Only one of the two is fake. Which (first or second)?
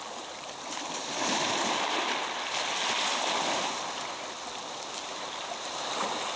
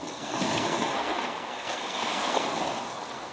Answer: second